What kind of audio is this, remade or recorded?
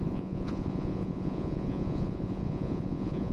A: remade